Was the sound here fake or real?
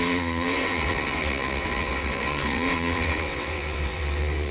fake